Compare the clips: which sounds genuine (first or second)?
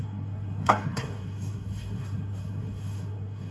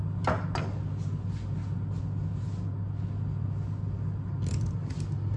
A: second